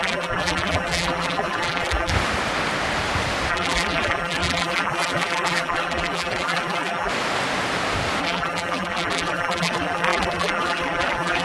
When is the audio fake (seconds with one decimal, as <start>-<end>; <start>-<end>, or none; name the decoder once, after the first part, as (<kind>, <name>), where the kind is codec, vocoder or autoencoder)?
0.0-2.1 (vocoder, BigVGAN v2); 3.5-7.1; 8.2-11.4